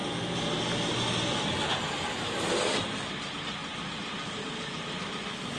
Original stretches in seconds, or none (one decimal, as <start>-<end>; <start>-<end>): 0.0-3.6; 4.8-5.6